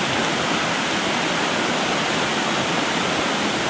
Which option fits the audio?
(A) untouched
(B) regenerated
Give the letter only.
A